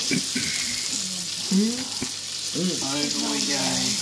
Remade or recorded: recorded